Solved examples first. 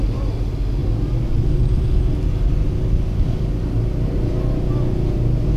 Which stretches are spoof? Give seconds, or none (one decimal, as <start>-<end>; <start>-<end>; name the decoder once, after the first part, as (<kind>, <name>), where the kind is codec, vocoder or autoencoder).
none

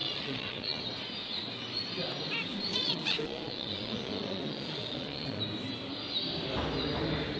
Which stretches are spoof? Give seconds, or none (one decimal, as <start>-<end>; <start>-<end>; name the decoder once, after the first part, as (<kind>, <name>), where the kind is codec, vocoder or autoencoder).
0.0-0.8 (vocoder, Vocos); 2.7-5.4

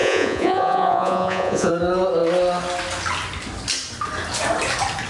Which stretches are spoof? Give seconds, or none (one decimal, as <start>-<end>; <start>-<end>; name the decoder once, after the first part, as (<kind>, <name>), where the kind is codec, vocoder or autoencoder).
0.0-1.7 (vocoder, Vocos)

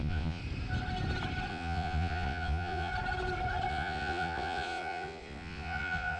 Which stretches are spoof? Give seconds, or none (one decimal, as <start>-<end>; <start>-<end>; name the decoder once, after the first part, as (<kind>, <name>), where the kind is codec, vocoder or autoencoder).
0.0-0.4 (vocoder, Vocos); 1.5-2.9; 3.7-6.2